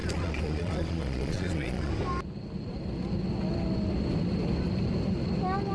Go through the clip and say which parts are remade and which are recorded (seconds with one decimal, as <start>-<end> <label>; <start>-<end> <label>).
0.0-1.9 remade; 1.9-5.7 recorded